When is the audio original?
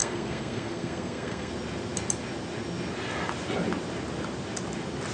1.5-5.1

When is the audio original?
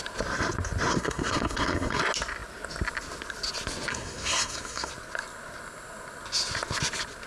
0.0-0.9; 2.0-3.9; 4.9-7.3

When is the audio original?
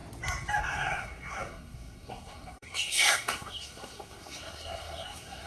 0.0-0.6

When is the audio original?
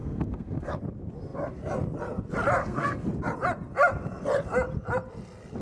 0.8-2.6; 3.1-5.6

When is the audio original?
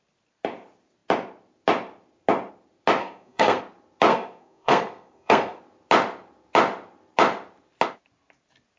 0.0-3.0; 3.6-4.1; 5.6-8.8